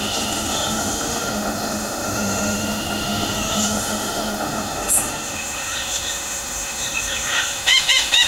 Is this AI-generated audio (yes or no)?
yes